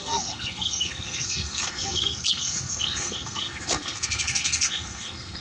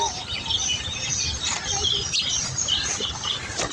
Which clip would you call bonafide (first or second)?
second